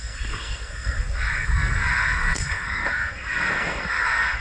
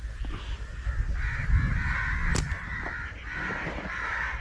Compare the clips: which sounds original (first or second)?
second